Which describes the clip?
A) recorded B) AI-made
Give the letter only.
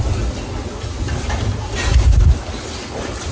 A